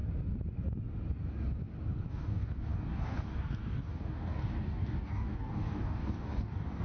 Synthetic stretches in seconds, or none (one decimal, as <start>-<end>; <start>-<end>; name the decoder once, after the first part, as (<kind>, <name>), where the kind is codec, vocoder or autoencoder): 2.1-6.8 (codec, DAC)